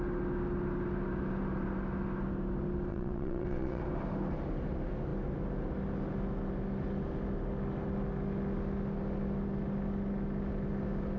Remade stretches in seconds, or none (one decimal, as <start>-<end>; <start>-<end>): 2.9-3.8